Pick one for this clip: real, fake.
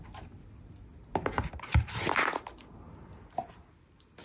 real